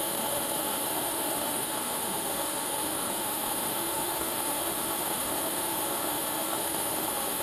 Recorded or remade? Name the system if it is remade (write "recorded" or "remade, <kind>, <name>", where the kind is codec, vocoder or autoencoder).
remade, autoencoder, DAC-VAE